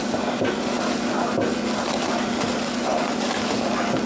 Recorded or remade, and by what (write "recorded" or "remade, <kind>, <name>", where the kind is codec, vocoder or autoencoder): recorded